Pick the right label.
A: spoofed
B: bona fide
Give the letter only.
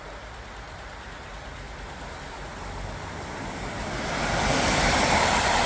A